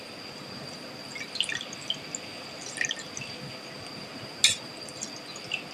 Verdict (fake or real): real